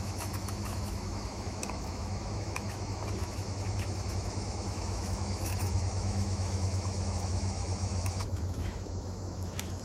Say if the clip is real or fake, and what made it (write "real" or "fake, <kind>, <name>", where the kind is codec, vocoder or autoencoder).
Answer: fake, autoencoder, DAC-VAE